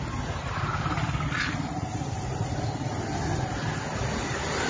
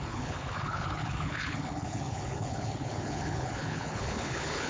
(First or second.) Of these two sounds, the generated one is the second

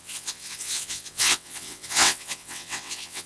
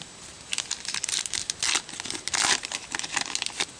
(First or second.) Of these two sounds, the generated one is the first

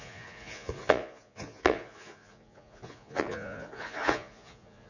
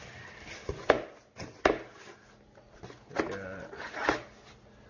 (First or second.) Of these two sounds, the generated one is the first